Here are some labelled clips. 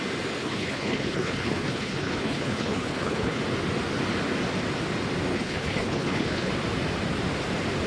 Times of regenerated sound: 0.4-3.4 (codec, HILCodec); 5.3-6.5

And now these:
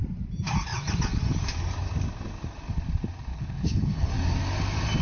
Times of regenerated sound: 3.3-4.1 (codec, HILCodec)

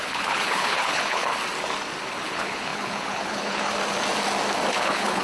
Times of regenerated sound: 0.0-1.3 (codec, HILCodec); 2.2-3.7; 4.7-5.2